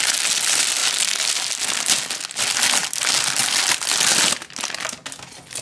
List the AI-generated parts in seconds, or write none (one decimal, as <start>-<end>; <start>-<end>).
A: none

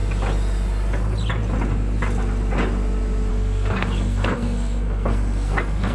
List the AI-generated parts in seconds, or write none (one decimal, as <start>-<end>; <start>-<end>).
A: 3.3-5.9

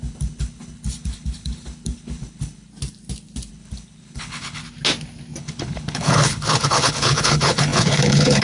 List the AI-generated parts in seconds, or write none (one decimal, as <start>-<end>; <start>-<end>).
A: 0.0-2.7; 3.5-4.6; 5.4-8.4

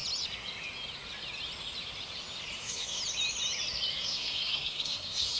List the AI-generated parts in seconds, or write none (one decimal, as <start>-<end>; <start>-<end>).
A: 2.6-3.0; 3.9-5.4